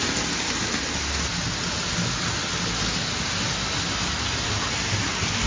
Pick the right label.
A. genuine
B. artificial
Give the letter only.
A